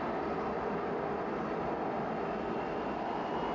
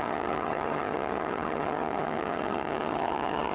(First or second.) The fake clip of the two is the second